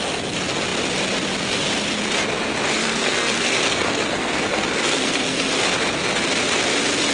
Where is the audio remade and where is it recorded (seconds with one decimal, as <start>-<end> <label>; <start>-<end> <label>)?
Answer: 0.0-2.8 recorded; 2.8-5.5 remade; 5.5-7.1 recorded